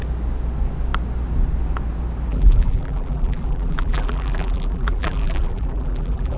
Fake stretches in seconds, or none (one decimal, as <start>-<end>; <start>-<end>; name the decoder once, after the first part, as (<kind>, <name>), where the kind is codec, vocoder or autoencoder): 2.3-6.4 (vocoder, BigVGAN v2)

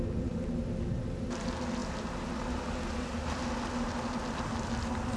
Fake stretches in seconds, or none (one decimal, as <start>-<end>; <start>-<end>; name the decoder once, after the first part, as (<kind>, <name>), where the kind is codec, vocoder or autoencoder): none

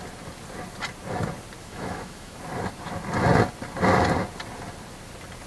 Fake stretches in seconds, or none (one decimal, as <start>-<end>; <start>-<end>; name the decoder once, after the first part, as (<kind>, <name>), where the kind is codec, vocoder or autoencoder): 1.6-2.4 (autoencoder, DAC-VAE)

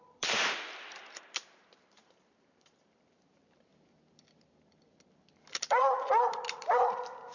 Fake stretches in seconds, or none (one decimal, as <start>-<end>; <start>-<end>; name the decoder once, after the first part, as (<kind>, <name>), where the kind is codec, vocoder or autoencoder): 0.0-3.7 (vocoder, BigVGAN v2); 5.7-7.3